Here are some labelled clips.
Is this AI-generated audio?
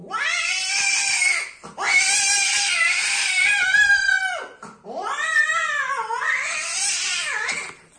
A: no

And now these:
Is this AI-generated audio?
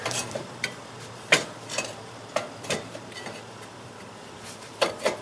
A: yes